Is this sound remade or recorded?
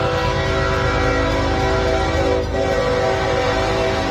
recorded